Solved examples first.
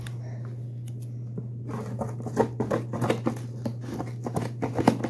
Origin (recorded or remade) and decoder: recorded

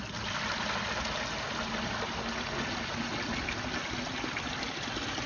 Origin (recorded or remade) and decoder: recorded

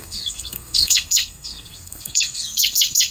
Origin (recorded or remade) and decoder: remade, codec, SNAC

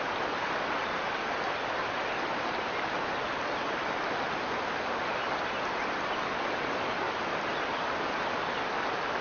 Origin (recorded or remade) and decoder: recorded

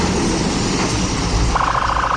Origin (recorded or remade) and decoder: recorded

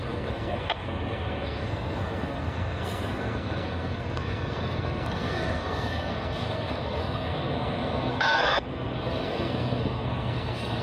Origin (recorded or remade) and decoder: remade, codec, SNAC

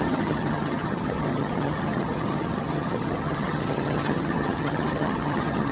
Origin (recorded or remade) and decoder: remade, vocoder, HiFi-GAN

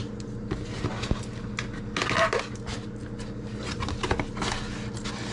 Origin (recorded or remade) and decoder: recorded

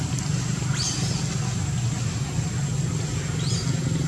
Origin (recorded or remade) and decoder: recorded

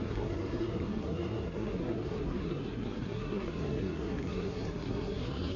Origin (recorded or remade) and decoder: remade, codec, SNAC